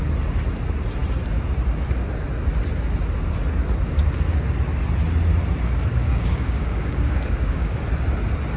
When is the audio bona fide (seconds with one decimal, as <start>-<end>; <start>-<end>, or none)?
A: 0.0-5.9; 7.8-8.6